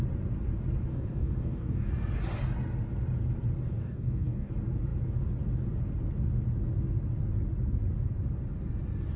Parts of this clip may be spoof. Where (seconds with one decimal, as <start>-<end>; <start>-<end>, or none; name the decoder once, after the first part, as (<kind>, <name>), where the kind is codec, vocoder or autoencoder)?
0.9-1.9 (codec, DAC); 3.8-4.5